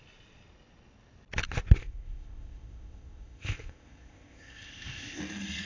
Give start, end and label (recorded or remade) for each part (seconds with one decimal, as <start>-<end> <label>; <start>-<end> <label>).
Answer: 0.0-1.8 recorded; 1.8-5.2 remade; 5.2-5.7 recorded